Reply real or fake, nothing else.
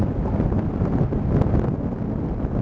real